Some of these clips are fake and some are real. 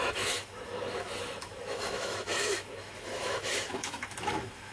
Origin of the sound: fake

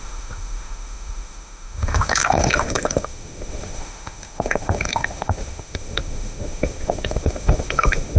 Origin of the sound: fake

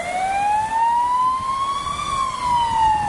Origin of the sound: real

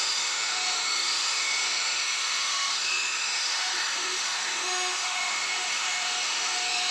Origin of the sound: fake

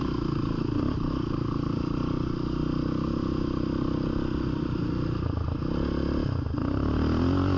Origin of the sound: real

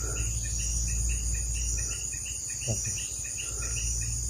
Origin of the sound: real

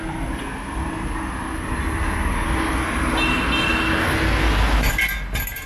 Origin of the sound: real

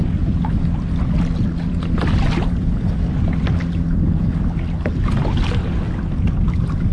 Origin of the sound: real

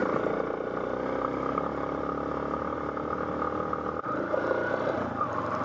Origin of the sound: real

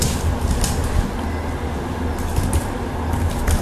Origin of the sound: real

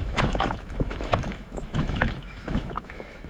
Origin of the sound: fake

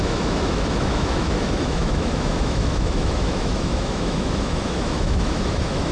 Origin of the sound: fake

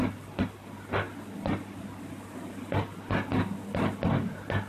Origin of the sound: real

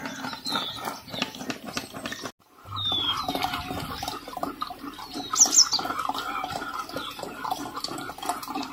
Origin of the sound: real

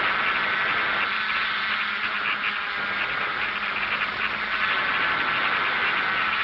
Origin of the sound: real